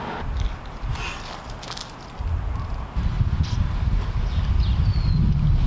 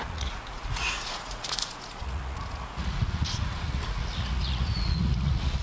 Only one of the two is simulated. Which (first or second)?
second